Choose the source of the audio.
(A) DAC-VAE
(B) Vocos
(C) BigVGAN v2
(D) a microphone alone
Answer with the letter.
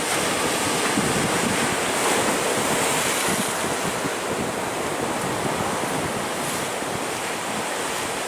D